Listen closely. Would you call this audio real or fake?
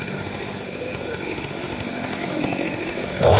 fake